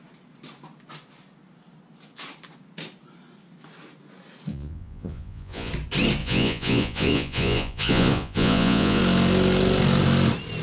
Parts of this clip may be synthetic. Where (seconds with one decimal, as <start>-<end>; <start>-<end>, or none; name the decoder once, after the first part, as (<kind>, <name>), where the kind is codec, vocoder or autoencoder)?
4.5-5.7 (vocoder, Vocos); 6.2-9.0